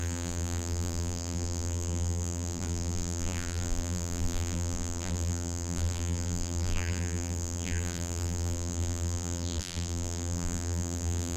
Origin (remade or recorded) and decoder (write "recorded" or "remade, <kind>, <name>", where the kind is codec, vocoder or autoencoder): remade, vocoder, BigVGAN v2